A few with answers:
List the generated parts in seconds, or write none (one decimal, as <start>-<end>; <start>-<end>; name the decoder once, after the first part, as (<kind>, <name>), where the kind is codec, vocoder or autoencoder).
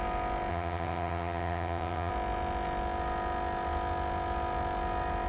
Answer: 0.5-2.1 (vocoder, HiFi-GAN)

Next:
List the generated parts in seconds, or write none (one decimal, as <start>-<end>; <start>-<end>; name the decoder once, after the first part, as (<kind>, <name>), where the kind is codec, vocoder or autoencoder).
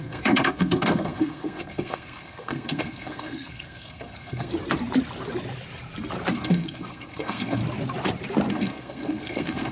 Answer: 0.0-4.5 (codec, SNAC); 6.3-7.6; 8.5-9.7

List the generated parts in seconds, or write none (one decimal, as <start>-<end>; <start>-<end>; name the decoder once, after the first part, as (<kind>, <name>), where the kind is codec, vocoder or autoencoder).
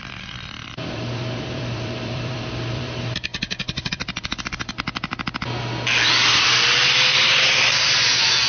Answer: 0.0-3.3 (vocoder, BigVGAN v2); 3.9-5.1; 6.8-8.5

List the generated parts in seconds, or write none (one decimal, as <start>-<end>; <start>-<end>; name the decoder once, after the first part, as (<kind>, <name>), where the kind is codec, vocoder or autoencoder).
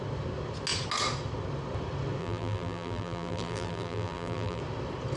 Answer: 2.2-4.6 (vocoder, BigVGAN v2)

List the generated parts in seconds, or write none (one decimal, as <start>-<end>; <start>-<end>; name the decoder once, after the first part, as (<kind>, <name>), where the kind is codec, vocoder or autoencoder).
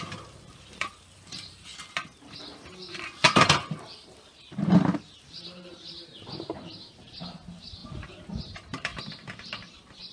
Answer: 0.0-1.7 (vocoder, BigVGAN v2); 4.4-8.9; 9.6-10.1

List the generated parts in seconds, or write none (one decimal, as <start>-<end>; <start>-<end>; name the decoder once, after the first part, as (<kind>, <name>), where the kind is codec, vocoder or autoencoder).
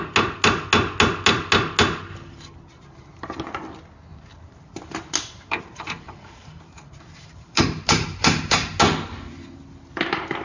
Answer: 4.1-8.8 (vocoder, BigVGAN v2)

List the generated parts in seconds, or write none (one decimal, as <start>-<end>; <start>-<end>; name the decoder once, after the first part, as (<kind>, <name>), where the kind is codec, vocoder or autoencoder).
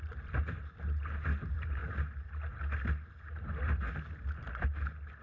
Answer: 0.0-1.8 (vocoder, BigVGAN v2)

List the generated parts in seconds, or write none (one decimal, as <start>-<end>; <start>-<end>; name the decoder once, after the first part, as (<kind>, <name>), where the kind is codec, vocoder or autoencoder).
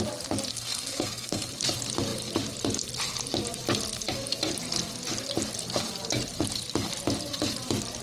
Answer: 0.5-1.5 (codec, SNAC)